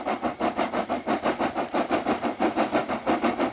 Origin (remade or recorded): recorded